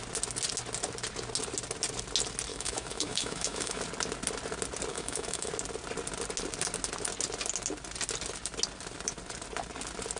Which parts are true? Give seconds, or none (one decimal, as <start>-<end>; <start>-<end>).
0.0-2.5; 3.8-4.9; 5.5-10.2